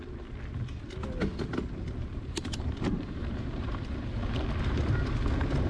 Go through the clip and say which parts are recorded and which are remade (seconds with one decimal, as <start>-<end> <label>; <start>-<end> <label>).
0.0-2.0 recorded; 2.0-4.1 remade; 4.1-5.7 recorded